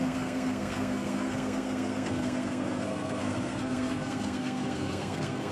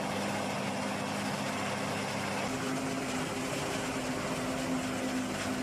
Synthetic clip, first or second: first